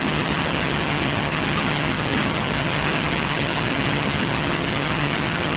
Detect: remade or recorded remade